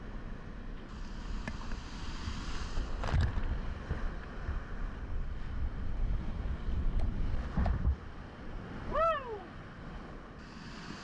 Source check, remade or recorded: recorded